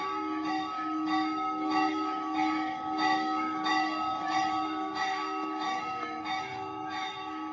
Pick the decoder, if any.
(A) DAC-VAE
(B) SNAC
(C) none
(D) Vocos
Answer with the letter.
A